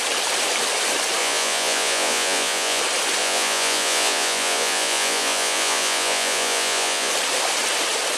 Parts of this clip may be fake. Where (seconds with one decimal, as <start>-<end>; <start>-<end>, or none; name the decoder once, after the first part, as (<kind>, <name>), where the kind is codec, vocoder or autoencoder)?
1.2-2.8 (vocoder, Vocos); 3.2-7.1